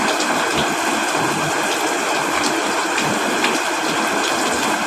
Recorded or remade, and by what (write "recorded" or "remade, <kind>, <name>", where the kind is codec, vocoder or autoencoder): recorded